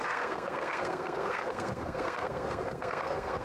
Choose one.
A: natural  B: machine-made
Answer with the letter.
B